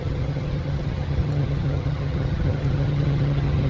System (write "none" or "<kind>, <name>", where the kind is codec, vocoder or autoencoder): vocoder, HiFi-GAN